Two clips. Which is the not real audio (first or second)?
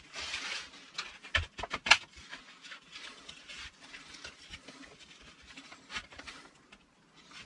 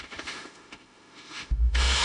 second